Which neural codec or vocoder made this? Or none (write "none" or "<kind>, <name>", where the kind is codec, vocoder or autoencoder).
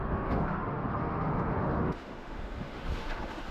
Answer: autoencoder, DAC-VAE